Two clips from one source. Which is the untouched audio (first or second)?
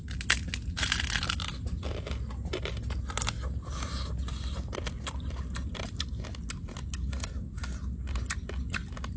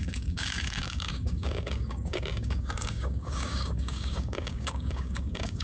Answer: first